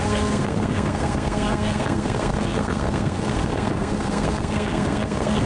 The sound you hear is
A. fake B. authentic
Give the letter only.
A